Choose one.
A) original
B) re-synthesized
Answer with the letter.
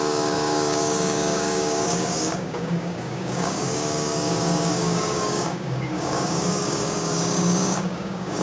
B